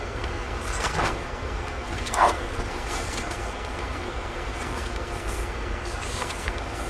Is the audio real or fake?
fake